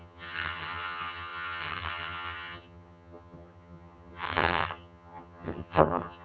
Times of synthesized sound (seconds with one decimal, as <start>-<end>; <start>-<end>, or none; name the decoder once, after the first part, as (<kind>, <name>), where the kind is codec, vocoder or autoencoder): 0.0-6.2 (vocoder, HiFi-GAN)